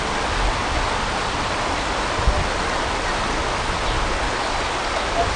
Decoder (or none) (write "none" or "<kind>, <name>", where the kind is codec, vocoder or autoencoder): none